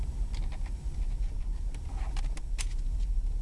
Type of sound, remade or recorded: recorded